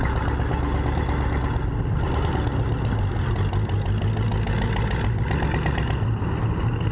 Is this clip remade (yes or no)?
no